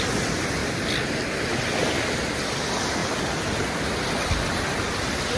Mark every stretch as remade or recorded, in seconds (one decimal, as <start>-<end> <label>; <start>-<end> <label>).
0.0-5.4 recorded